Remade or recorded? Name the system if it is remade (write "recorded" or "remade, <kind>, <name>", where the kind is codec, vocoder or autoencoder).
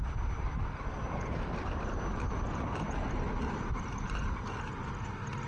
recorded